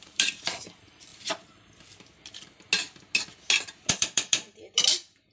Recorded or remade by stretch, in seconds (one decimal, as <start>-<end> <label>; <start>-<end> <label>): 0.0-1.1 remade; 1.1-3.9 recorded; 3.9-5.3 remade